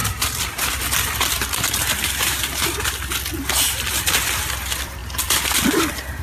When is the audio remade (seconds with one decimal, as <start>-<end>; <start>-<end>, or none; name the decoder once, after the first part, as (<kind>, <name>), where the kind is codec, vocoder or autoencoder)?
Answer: 3.7-5.0 (vocoder, BigVGAN v2); 5.8-6.2